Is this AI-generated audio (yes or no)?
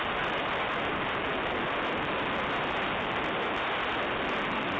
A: no